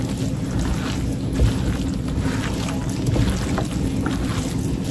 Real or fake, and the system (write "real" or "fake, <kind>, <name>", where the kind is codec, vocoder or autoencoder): real